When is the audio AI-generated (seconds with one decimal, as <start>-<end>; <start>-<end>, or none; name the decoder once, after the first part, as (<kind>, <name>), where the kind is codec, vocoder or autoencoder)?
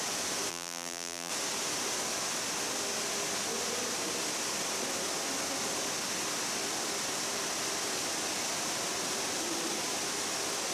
0.5-1.3 (vocoder, BigVGAN v2)